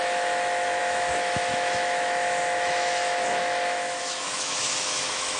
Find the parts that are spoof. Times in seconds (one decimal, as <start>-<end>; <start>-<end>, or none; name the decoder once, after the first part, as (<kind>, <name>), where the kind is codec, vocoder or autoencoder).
0.0-5.4 (autoencoder, DAC-VAE)